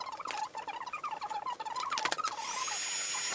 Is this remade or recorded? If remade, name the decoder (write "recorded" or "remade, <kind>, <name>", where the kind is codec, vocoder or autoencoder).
recorded